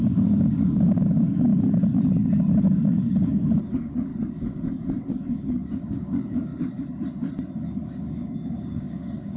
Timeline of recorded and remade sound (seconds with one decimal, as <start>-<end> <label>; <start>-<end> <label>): 0.0-1.5 remade; 1.5-2.6 recorded; 2.6-4.1 remade; 4.1-5.3 recorded; 5.3-6.5 remade; 6.5-8.0 recorded; 8.0-9.4 remade